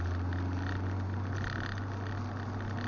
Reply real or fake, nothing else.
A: real